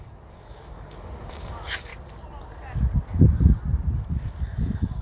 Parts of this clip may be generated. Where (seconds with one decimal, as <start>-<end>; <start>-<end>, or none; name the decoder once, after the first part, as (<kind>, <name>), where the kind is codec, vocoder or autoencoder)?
0.0-1.9 (codec, DAC); 4.0-5.0